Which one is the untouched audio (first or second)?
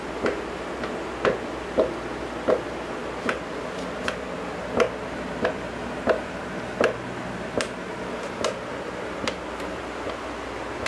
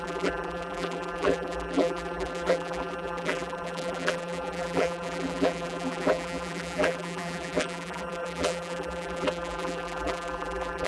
first